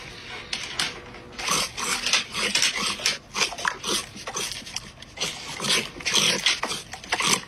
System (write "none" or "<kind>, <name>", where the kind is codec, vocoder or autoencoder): none